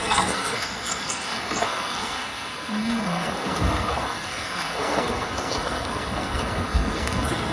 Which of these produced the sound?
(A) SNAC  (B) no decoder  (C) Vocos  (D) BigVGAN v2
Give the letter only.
A